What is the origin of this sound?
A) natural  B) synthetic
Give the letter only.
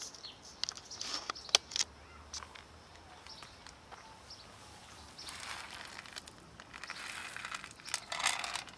A